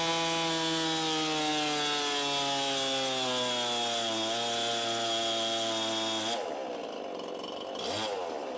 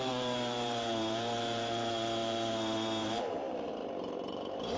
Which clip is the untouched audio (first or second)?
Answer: first